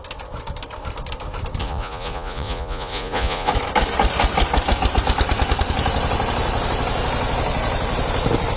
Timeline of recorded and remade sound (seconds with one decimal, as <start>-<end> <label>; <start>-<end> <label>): 0.0-1.6 recorded; 1.6-3.5 remade; 3.5-8.6 recorded